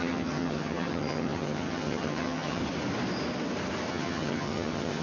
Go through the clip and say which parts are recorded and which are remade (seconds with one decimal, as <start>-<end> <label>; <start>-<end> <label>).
0.0-2.6 remade; 2.6-3.9 recorded; 3.9-5.0 remade